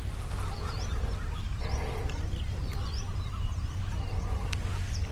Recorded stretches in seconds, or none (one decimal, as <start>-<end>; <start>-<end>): 0.0-0.9; 1.6-2.7; 4.1-5.1